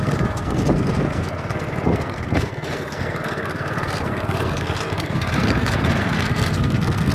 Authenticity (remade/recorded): remade